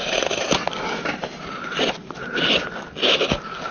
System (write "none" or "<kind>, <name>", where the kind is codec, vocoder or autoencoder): none